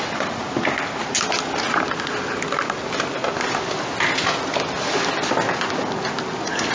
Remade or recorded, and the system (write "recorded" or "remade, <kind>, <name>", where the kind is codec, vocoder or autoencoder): recorded